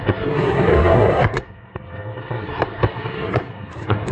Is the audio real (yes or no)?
no